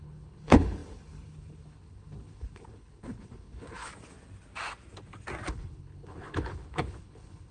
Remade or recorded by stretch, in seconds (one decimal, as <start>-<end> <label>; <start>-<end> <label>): 0.0-3.9 remade; 3.9-5.5 recorded; 5.5-7.5 remade